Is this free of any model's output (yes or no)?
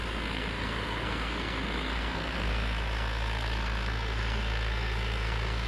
no